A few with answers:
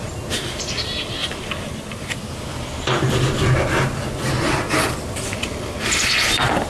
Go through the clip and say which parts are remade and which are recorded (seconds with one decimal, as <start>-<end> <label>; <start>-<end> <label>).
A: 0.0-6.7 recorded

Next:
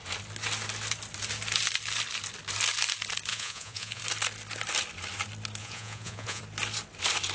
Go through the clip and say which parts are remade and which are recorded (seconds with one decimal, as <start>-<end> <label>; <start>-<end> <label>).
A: 0.0-3.3 recorded; 3.3-4.0 remade; 4.0-5.6 recorded; 5.6-6.4 remade; 6.4-7.3 recorded

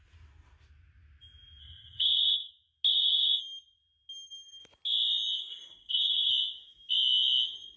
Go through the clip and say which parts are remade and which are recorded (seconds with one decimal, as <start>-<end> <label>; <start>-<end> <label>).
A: 0.0-1.6 recorded; 1.6-2.5 remade; 2.5-2.9 recorded; 2.9-3.4 remade; 3.4-5.4 recorded; 5.4-6.3 remade; 6.3-7.8 recorded

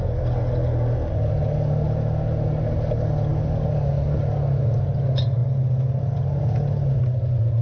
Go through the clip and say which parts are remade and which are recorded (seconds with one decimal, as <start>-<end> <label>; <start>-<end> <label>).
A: 0.0-7.6 recorded

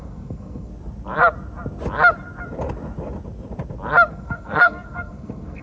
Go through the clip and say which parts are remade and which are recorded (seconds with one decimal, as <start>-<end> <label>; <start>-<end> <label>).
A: 0.0-0.7 remade; 0.7-4.1 recorded; 4.1-5.6 remade

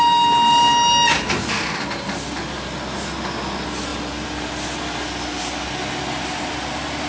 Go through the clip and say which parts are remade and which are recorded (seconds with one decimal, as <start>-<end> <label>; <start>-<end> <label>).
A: 0.0-7.1 recorded

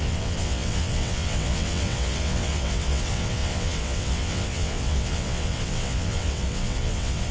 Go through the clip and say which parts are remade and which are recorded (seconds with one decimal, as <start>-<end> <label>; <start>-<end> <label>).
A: 0.0-7.3 remade

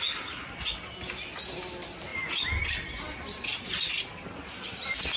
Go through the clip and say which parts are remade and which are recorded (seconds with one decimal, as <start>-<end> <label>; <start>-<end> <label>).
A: 0.0-5.2 recorded